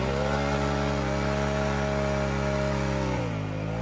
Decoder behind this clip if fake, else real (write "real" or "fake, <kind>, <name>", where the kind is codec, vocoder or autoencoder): real